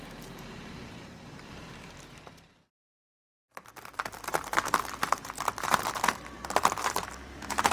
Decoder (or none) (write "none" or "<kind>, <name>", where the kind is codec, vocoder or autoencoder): vocoder, BigVGAN v2